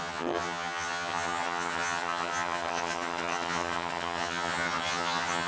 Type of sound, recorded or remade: remade